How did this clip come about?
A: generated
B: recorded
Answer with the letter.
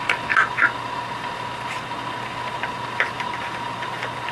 B